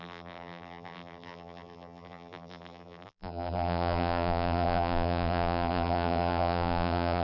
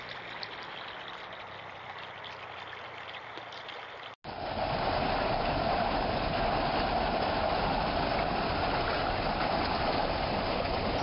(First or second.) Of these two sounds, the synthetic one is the first